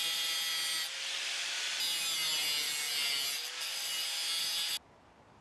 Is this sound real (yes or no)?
yes